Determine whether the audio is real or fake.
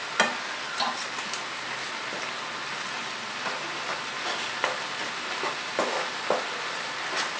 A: real